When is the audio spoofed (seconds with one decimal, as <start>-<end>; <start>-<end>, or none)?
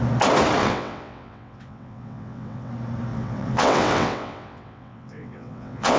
0.6-2.7; 3.1-6.0